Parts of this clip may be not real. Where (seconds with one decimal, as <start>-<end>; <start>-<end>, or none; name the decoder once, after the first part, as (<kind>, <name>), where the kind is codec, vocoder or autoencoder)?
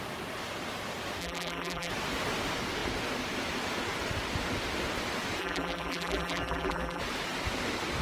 1.2-1.9 (vocoder, BigVGAN v2); 5.4-7.0